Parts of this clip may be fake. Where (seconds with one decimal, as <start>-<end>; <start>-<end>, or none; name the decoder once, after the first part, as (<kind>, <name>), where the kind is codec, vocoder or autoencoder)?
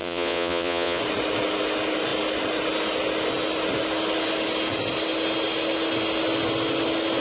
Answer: 0.0-1.0 (vocoder, Vocos)